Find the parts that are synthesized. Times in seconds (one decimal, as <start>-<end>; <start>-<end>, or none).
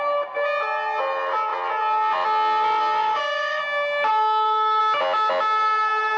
3.0-3.6; 4.1-4.8